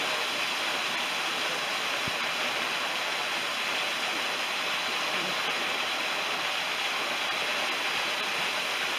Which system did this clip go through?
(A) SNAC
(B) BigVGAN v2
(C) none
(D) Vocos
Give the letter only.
C